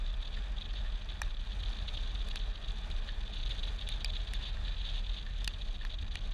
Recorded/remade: recorded